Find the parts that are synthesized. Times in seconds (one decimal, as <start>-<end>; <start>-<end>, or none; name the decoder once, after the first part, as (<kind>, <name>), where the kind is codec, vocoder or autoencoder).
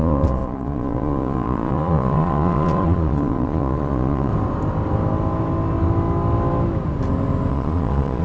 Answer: 0.0-4.3 (vocoder, Vocos); 7.5-8.2